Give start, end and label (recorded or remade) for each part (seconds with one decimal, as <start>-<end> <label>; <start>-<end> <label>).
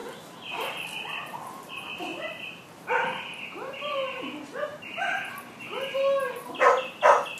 0.0-7.4 recorded